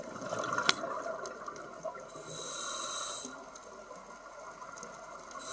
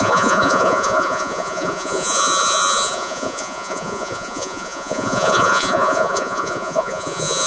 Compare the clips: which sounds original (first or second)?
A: first